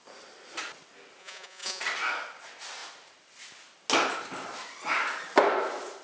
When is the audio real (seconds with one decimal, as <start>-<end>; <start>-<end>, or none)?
0.0-1.2; 1.8-6.0